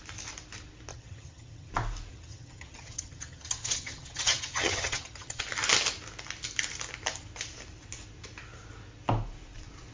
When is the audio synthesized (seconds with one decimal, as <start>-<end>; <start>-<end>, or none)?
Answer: 0.9-1.7; 2.1-5.4